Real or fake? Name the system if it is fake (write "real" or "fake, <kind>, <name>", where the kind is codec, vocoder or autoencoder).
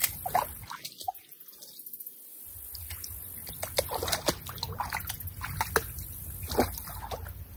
real